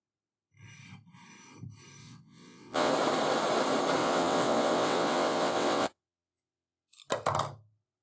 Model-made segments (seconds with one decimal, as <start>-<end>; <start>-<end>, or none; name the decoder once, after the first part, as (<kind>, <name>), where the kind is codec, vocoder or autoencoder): 2.0-2.9 (vocoder, WaveNeXt); 4.0-6.9